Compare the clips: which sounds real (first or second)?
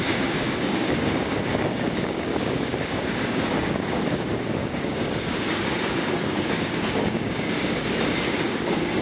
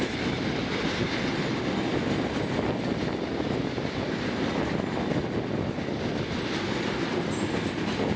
second